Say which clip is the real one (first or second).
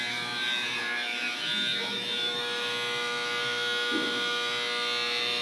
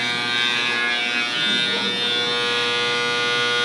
second